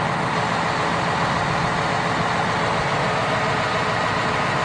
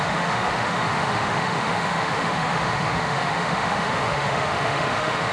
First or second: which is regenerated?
second